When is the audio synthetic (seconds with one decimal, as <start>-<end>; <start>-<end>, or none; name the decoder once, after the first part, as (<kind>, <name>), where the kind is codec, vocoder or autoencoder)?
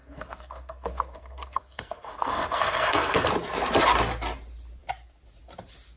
0.0-3.3 (codec, SNAC)